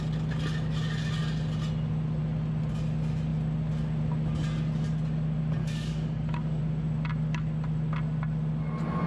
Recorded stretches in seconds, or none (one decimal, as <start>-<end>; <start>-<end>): 0.0-5.6; 6.6-9.1